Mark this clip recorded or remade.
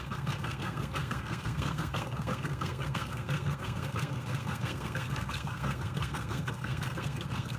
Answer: remade